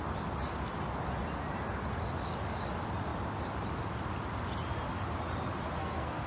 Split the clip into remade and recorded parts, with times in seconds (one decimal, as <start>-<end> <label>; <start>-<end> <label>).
0.0-5.8 recorded; 5.8-6.3 remade